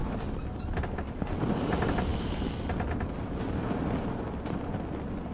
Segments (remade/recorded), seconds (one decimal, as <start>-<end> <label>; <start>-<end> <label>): 0.0-5.3 recorded